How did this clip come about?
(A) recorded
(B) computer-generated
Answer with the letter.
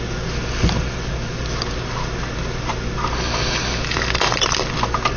A